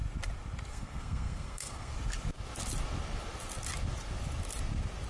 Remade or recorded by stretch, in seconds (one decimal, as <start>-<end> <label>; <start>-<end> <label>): 0.0-0.7 recorded; 0.7-1.9 remade; 1.9-5.1 recorded